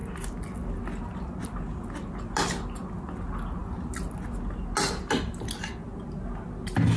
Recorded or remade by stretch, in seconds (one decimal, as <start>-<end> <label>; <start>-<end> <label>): 0.0-7.0 recorded